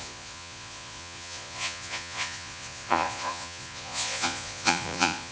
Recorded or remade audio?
remade